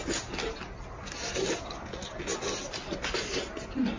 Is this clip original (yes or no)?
yes